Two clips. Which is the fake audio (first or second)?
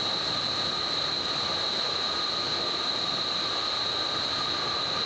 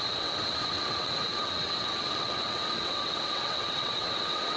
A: second